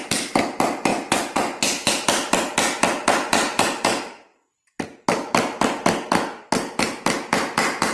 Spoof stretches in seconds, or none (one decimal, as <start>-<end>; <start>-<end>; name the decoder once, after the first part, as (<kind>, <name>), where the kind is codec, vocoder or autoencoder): 0.9-1.9 (vocoder, Vocos)